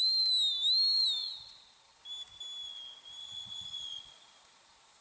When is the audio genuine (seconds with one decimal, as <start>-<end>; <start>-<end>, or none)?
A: 0.0-1.2; 2.0-3.2